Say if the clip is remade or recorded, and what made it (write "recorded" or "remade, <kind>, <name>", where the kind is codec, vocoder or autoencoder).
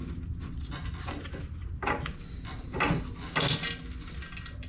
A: recorded